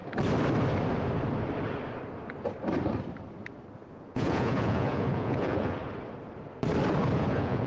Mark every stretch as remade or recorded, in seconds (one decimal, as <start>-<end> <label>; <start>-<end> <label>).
0.0-3.9 recorded; 3.9-5.8 remade; 5.8-7.2 recorded; 7.2-7.7 remade